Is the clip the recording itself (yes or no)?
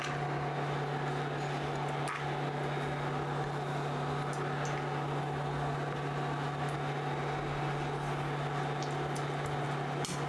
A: yes